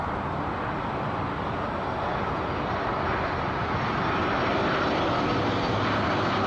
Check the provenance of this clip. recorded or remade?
recorded